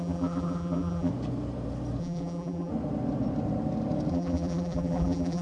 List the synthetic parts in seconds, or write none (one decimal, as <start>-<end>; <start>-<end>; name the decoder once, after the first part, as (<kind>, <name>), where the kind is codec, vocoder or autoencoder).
0.0-1.1 (vocoder, BigVGAN v2); 2.0-2.7; 4.1-5.4